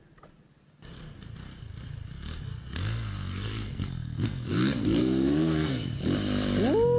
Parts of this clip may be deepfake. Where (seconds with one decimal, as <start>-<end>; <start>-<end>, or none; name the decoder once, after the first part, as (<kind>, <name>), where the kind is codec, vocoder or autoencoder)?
2.5-6.0 (codec, SNAC)